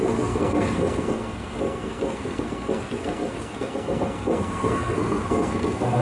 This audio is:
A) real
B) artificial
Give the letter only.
B